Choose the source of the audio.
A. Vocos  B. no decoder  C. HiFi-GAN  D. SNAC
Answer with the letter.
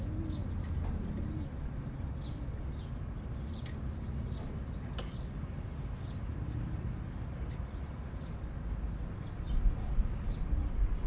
B